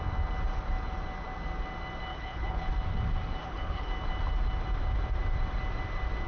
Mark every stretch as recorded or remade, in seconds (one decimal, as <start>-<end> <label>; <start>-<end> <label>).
0.0-2.1 recorded; 2.1-2.7 remade; 2.7-3.4 recorded; 3.4-3.9 remade; 3.9-6.3 recorded

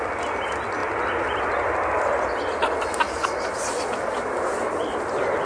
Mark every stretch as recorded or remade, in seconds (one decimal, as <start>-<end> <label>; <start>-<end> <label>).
0.0-5.5 recorded

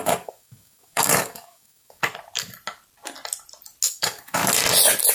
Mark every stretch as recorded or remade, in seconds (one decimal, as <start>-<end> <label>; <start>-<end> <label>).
0.0-2.0 remade; 2.0-3.9 recorded; 3.9-4.4 remade; 4.4-5.1 recorded